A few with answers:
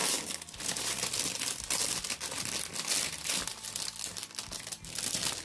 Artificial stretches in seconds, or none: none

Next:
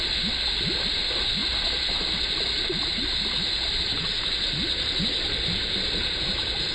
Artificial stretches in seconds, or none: none

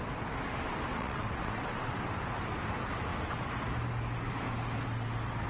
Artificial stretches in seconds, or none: 0.9-1.9 (vocoder, WaveNeXt)

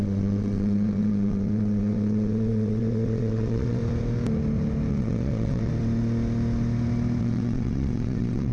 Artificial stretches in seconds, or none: 0.0-3.8 (vocoder, WaveNeXt); 4.9-5.7; 7.2-8.5

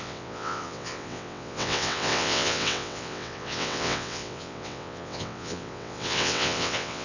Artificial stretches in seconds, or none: 0.0-7.0 (vocoder, WaveNeXt)

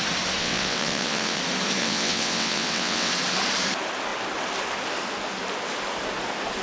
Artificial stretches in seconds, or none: 0.4-1.4 (vocoder, WaveNeXt); 1.8-3.1

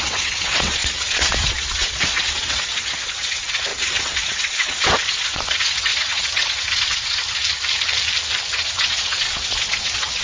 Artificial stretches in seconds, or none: 0.0-7.2 (vocoder, WaveNeXt); 8.5-10.2

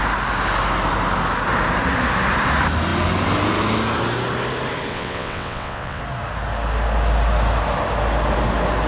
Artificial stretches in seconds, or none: 4.9-6.0 (vocoder, WaveNeXt)